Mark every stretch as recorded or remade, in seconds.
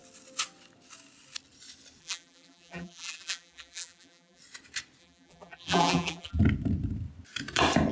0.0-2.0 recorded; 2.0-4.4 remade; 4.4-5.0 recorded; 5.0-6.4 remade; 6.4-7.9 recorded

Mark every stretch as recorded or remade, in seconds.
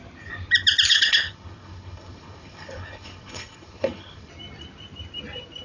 0.0-0.9 recorded; 0.9-4.3 remade; 4.3-5.6 recorded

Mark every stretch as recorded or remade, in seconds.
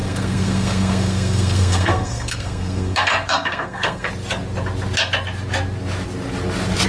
0.0-4.1 remade; 4.1-6.9 recorded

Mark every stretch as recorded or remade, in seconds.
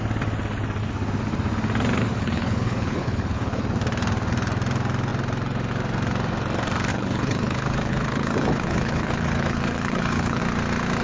0.0-2.1 recorded; 2.1-3.6 remade; 3.6-6.9 recorded; 6.9-10.4 remade; 10.4-11.0 recorded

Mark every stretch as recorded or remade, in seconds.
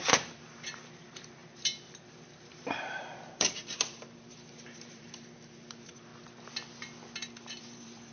0.0-6.1 remade; 6.1-7.6 recorded; 7.6-8.1 remade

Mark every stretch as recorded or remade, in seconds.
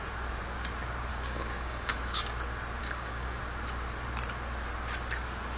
0.0-1.1 recorded; 1.1-2.2 remade; 2.2-2.8 recorded; 2.8-3.4 remade; 3.4-5.6 recorded